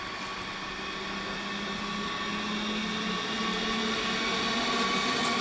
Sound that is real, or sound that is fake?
real